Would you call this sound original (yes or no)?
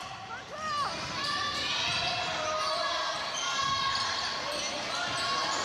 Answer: yes